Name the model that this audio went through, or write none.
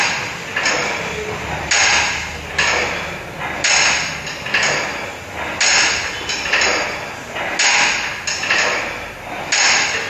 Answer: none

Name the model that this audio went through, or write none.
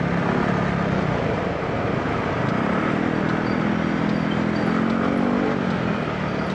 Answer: none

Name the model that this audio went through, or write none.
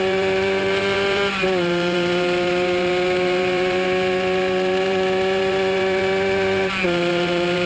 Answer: vocoder, BigVGAN v2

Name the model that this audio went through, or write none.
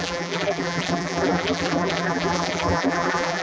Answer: vocoder, BigVGAN v2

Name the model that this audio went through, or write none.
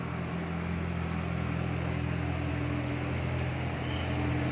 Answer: none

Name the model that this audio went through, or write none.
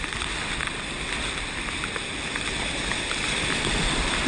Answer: none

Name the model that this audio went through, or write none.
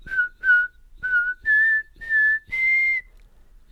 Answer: none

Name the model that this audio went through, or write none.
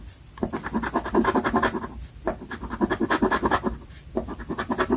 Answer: none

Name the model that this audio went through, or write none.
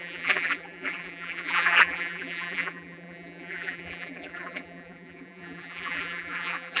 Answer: vocoder, BigVGAN v2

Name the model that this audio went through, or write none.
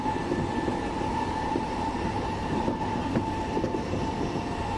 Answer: vocoder, BigVGAN v2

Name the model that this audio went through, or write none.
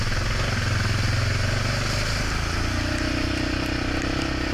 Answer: none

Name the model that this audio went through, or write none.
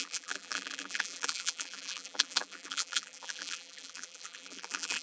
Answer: vocoder, BigVGAN v2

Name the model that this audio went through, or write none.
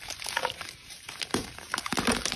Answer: vocoder, BigVGAN v2